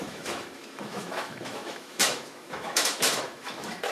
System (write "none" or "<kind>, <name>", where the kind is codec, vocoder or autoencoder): autoencoder, DAC-VAE